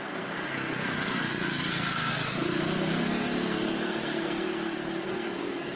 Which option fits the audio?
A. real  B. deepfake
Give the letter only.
B